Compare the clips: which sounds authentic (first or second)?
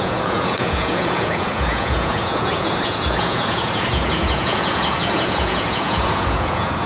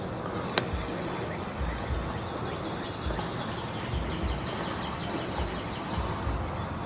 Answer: second